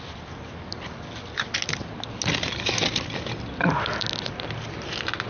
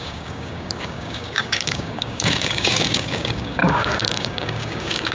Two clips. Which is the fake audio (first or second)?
second